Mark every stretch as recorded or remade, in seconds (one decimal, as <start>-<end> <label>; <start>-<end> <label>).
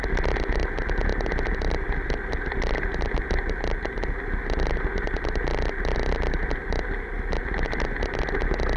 0.0-8.8 recorded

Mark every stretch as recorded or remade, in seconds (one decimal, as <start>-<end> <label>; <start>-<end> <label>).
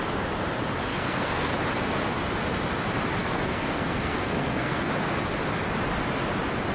0.0-0.9 recorded; 0.9-1.5 remade; 1.5-3.2 recorded; 3.2-4.9 remade; 4.9-6.7 recorded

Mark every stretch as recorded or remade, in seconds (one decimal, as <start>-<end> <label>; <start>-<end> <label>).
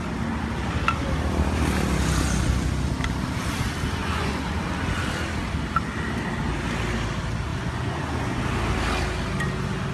0.0-4.0 recorded; 4.0-4.6 remade; 4.6-7.5 recorded; 7.5-8.4 remade; 8.4-9.9 recorded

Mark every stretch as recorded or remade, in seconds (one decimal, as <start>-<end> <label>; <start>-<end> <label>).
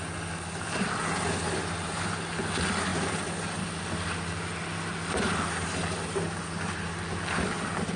0.0-8.0 recorded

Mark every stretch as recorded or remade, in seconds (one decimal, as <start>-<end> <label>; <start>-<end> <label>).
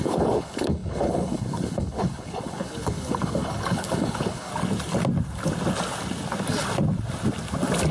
0.0-4.5 remade; 4.5-7.9 recorded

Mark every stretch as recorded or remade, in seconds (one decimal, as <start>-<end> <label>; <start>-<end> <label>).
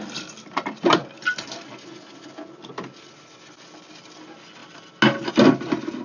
0.0-6.0 recorded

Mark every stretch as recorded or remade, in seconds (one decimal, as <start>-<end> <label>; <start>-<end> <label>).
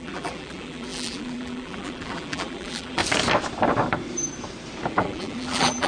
0.0-3.0 remade; 3.0-4.9 recorded; 4.9-5.9 remade